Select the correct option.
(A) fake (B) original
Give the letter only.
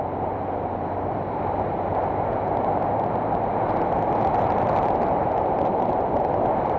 A